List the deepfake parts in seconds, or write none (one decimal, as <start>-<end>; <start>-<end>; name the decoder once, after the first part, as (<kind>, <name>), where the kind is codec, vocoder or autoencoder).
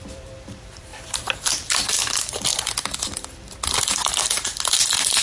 0.0-5.2 (vocoder, BigVGAN v2)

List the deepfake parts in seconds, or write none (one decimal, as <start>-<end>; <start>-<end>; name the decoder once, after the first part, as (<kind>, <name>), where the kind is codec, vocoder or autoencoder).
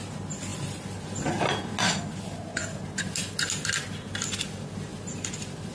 none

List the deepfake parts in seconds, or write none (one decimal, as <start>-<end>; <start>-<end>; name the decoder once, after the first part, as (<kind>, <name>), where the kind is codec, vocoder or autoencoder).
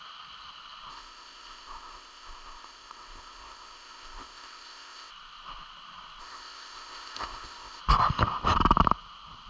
0.9-5.1 (codec, ZipCodec); 6.2-7.8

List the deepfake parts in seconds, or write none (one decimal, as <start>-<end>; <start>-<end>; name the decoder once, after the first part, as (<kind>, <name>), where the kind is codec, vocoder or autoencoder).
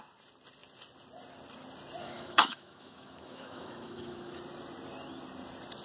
2.0-4.4 (autoencoder, DAC-VAE)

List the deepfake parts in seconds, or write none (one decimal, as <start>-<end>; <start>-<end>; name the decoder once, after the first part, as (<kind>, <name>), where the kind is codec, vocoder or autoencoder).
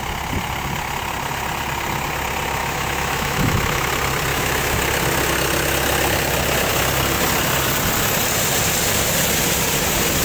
2.6-3.9 (autoencoder, DAC-VAE); 4.3-4.8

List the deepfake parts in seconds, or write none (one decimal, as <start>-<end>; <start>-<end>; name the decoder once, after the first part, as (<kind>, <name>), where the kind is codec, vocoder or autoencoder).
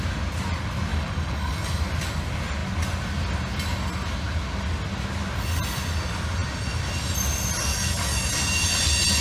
0.9-1.8 (codec, DAC); 7.7-8.3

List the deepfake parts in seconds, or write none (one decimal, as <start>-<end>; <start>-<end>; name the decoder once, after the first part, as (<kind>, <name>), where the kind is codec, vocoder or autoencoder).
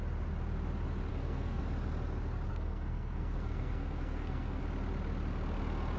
1.1-1.6 (codec, SNAC); 2.5-4.6